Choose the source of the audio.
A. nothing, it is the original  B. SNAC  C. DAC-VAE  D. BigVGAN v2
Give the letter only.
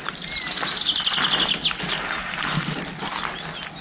A